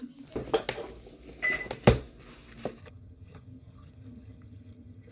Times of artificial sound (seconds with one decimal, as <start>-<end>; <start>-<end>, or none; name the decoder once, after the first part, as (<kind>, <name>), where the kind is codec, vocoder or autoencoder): 2.8-5.1 (vocoder, HiFi-GAN)